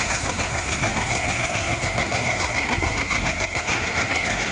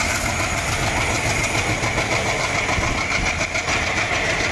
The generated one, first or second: first